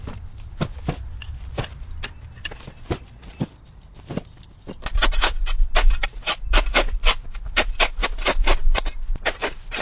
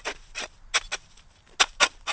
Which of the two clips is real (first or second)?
second